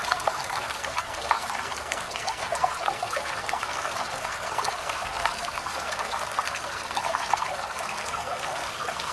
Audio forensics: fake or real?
fake